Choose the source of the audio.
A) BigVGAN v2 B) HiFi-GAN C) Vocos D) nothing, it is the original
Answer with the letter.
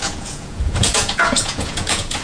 C